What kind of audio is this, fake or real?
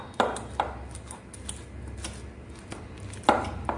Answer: real